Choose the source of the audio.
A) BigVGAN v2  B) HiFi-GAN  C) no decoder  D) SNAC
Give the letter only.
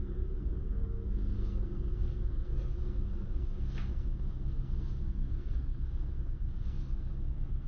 D